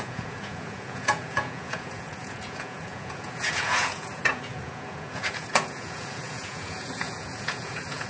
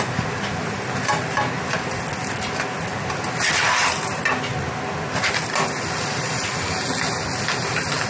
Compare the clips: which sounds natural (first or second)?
second